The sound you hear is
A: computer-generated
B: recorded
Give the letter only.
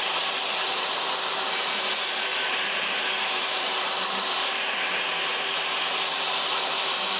A